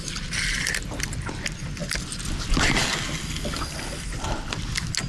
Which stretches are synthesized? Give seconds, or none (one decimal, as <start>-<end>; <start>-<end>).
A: none